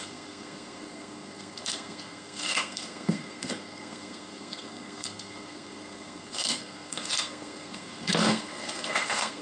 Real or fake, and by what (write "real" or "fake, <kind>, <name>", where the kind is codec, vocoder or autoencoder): fake, codec, SNAC